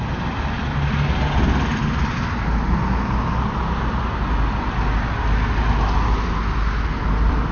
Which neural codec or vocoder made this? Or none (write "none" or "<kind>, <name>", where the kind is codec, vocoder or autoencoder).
none